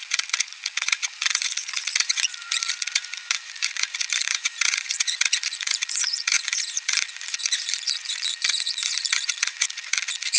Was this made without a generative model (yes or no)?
no